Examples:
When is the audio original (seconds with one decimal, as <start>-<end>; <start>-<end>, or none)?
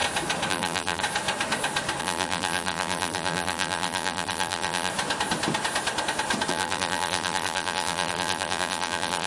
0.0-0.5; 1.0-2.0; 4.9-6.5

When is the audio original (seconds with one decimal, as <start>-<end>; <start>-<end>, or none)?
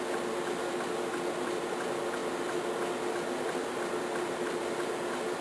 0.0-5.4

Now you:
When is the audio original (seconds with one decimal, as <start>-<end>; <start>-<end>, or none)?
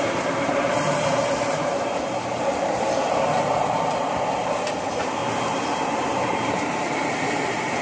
5.2-5.9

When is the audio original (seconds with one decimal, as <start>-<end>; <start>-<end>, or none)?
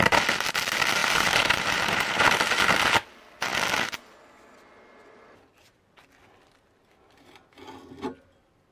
0.0-1.0; 2.4-8.7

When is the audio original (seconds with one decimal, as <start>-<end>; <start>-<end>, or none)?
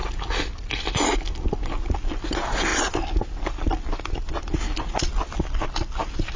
0.0-2.7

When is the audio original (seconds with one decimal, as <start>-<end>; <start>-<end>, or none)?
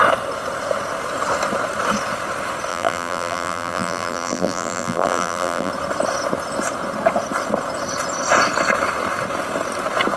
0.0-2.7; 5.7-10.2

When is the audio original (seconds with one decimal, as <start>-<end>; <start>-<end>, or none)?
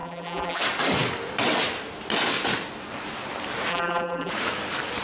0.6-3.7; 4.3-5.0